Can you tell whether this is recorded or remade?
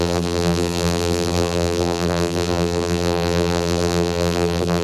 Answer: remade